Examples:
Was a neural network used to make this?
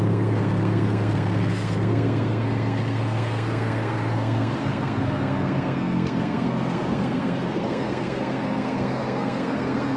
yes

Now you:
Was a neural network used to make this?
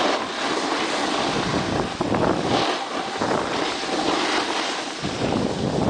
no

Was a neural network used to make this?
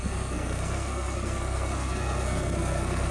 yes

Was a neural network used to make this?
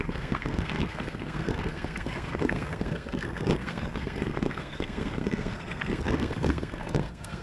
yes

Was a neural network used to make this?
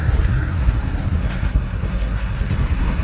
yes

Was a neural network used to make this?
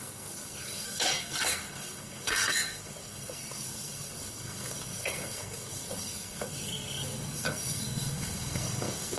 yes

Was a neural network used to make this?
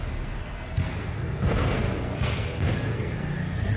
yes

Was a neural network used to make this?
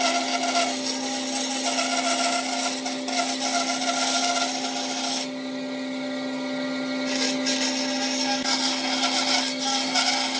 no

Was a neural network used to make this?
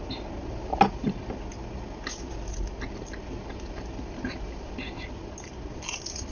no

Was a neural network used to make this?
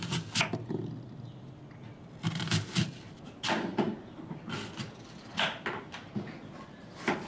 no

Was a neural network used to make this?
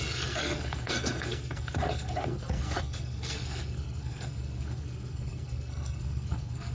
yes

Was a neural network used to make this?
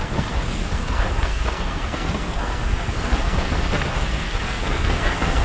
yes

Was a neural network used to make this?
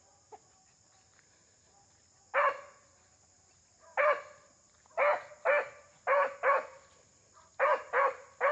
no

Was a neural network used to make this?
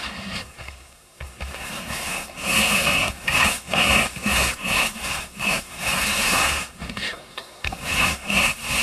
yes